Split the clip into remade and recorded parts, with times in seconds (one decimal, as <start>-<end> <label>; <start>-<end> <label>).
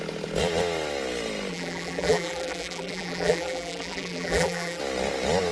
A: 0.0-1.5 recorded; 1.5-4.8 remade; 4.8-5.5 recorded